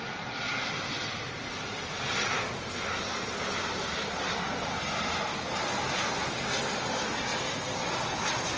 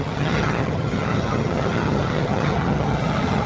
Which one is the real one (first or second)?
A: first